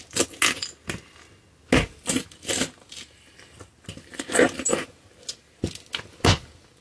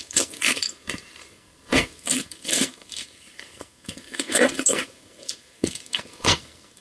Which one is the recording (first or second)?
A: first